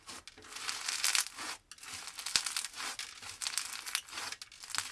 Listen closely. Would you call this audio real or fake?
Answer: real